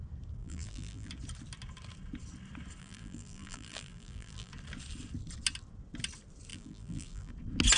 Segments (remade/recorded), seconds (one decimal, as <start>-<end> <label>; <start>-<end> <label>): 0.0-0.4 recorded; 0.4-1.1 remade; 1.1-2.8 recorded; 2.8-4.5 remade; 4.5-6.5 recorded; 6.5-7.3 remade; 7.3-7.8 recorded